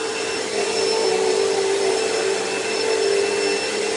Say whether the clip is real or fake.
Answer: real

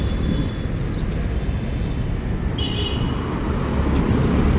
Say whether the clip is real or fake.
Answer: real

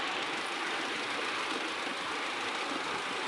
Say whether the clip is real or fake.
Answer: real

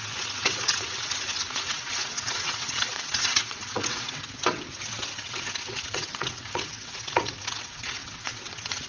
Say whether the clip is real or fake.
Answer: fake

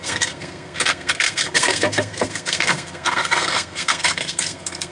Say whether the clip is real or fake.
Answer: fake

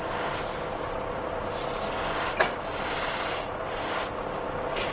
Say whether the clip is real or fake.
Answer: real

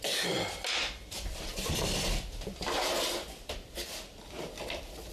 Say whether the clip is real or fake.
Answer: fake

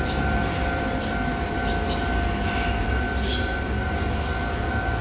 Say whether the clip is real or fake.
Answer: real